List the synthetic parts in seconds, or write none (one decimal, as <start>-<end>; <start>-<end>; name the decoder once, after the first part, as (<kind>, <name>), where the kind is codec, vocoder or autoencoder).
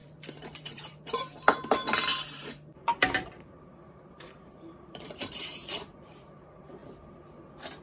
0.0-6.8 (vocoder, BigVGAN v2)